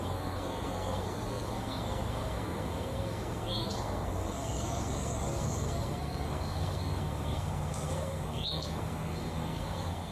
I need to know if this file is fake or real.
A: fake